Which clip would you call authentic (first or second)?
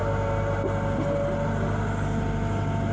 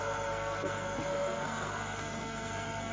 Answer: first